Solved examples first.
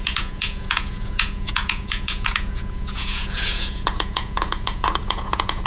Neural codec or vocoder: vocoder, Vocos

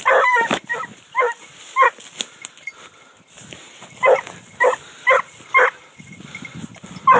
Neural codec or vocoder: none